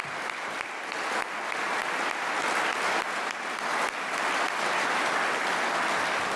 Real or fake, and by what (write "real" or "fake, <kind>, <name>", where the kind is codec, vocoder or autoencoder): real